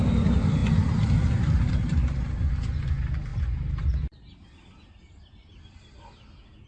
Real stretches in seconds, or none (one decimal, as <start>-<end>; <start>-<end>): 0.0-6.7